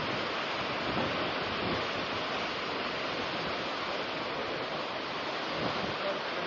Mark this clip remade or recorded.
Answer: recorded